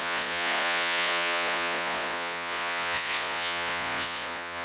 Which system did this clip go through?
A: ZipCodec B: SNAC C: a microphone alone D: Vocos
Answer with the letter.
D